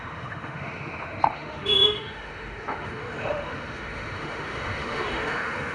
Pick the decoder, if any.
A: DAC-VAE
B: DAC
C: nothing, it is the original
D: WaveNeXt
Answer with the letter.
A